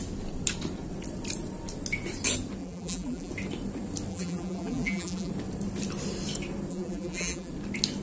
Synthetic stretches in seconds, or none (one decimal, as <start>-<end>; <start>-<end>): 2.6-3.3; 4.1-5.3; 6.7-7.5